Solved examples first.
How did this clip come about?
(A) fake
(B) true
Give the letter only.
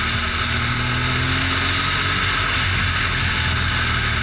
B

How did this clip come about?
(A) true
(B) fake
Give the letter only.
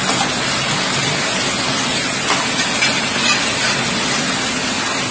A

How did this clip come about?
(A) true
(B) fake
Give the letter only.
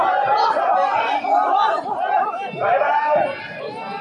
A